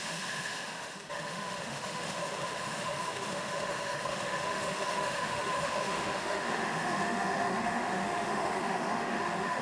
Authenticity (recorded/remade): remade